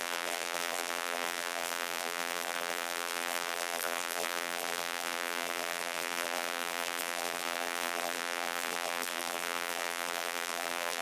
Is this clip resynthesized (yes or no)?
yes